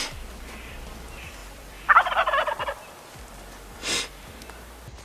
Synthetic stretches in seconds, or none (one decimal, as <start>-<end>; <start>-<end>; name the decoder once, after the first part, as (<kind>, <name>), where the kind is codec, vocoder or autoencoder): 1.4-4.4 (vocoder, BigVGAN v2)